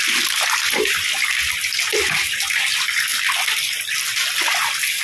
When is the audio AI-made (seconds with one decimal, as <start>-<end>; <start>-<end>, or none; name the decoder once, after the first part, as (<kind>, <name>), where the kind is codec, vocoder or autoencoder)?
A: 1.9-2.6 (vocoder, BigVGAN v2)